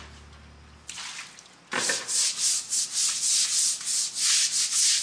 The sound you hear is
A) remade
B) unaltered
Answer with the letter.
B